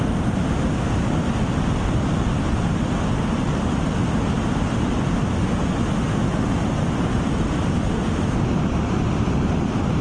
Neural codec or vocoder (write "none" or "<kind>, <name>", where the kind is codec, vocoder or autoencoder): none